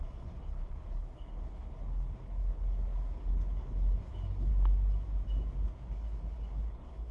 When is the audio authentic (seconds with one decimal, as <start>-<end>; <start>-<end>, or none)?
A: 4.5-5.9